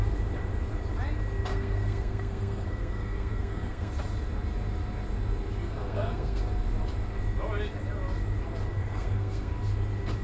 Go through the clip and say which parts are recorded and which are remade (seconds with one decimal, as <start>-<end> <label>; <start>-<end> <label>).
0.0-1.5 recorded; 1.5-3.9 remade; 3.9-5.6 recorded; 5.6-6.4 remade; 6.4-8.7 recorded; 8.7-9.5 remade; 9.5-10.2 recorded